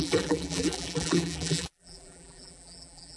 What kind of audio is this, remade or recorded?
remade